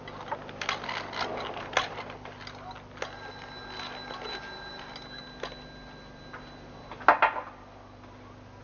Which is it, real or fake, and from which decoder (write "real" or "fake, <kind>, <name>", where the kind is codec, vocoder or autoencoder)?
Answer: real